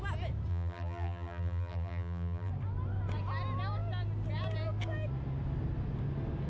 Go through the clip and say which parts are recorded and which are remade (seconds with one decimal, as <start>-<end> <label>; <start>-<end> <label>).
0.0-0.5 recorded; 0.5-2.5 remade; 2.5-6.5 recorded